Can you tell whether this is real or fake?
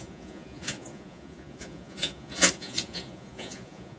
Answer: fake